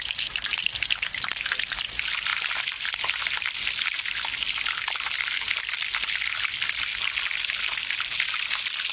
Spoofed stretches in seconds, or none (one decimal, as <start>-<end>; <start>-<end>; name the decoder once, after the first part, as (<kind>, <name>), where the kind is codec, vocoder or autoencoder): none